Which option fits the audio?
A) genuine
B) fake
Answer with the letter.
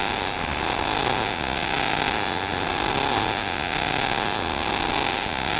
A